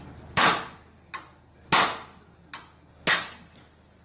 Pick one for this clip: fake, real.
real